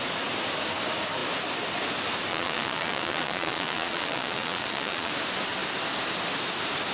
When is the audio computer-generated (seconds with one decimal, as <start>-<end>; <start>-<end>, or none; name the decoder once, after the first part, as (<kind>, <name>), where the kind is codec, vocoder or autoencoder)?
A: 2.3-5.1 (vocoder, Vocos)